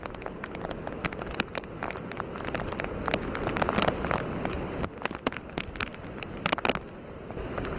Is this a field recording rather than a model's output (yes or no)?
no